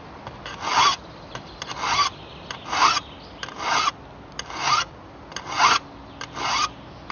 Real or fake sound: real